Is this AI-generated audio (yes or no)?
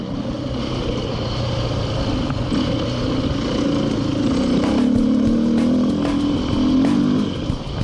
no